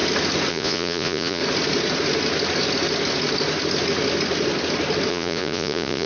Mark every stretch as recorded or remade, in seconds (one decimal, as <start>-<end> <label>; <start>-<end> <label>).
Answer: 0.0-0.5 recorded; 0.5-1.4 remade; 1.4-5.1 recorded; 5.1-6.1 remade